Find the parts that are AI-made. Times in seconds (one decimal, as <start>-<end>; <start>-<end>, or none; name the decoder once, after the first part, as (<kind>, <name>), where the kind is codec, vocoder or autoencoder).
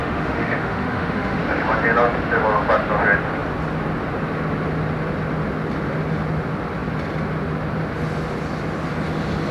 0.0-1.4 (autoencoder, DAC-VAE)